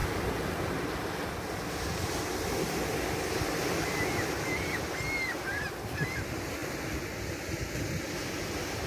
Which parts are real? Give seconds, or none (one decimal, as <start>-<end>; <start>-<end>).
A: 0.0-8.9